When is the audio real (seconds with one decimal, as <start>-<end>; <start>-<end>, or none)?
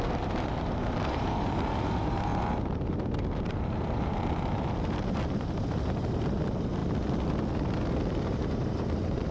2.3-3.3; 6.8-8.1